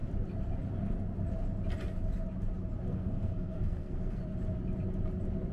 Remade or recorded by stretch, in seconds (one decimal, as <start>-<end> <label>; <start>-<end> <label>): 0.0-2.9 recorded; 2.9-4.2 remade; 4.2-5.5 recorded